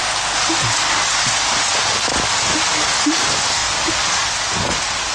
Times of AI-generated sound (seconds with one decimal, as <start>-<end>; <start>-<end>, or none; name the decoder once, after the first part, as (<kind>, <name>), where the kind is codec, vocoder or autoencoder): 3.0-3.6 (vocoder, BigVGAN v2); 4.5-5.1

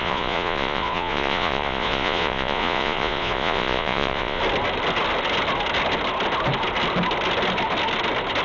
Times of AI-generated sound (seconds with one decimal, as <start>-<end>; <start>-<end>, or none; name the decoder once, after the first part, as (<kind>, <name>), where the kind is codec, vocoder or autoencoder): 0.0-4.4 (vocoder, Vocos)

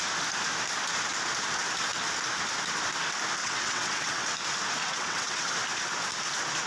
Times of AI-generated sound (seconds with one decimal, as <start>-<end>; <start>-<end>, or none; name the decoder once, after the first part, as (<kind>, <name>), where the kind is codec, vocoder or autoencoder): 3.4-4.2 (vocoder, WaveNeXt); 4.8-5.5

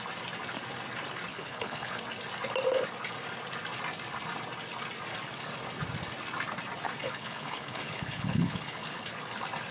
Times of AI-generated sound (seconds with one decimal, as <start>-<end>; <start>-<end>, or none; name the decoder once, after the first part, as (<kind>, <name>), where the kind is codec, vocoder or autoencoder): 1.3-2.0 (codec, HILCodec); 7.0-9.1

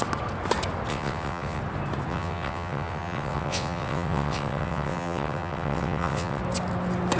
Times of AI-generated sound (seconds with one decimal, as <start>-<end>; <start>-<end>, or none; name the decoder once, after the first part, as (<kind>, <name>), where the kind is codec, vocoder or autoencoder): 0.9-1.6 (vocoder, WaveNeXt); 2.1-6.4

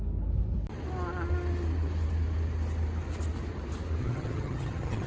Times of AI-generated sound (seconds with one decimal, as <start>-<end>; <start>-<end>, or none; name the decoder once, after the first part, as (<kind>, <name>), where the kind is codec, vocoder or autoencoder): 4.0-5.1 (vocoder, HiFi-GAN)

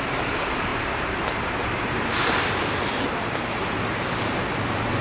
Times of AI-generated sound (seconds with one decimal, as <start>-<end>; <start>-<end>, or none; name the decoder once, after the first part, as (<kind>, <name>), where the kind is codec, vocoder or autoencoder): 0.0-3.6 (vocoder, BigVGAN v2); 4.6-5.0